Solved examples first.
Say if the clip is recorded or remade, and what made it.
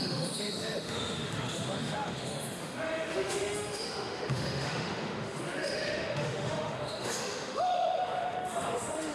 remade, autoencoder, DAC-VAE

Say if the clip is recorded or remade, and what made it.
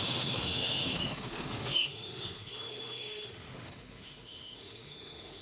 remade, autoencoder, DAC-VAE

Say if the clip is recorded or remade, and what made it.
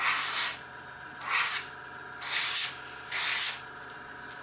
recorded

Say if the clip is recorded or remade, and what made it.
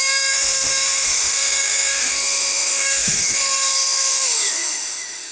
remade, autoencoder, DAC-VAE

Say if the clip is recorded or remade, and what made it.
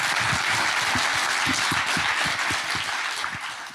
recorded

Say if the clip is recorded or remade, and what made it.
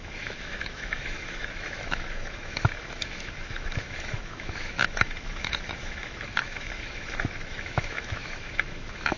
remade, autoencoder, DAC-VAE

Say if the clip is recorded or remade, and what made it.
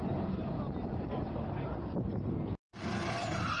recorded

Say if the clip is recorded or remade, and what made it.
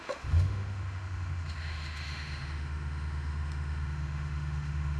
remade, autoencoder, DAC-VAE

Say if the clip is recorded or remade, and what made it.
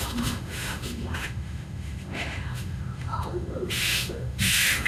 remade, autoencoder, DAC-VAE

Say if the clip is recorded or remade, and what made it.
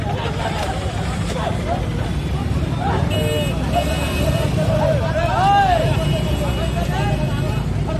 recorded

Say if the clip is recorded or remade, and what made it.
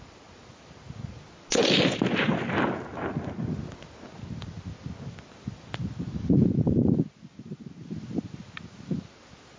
recorded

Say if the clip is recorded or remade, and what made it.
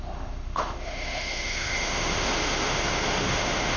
remade, autoencoder, DAC-VAE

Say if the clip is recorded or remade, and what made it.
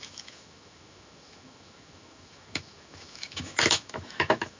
remade, autoencoder, DAC-VAE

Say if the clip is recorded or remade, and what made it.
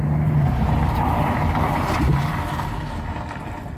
recorded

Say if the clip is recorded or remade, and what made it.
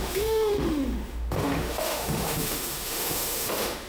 remade, autoencoder, DAC-VAE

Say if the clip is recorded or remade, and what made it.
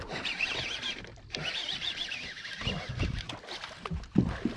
recorded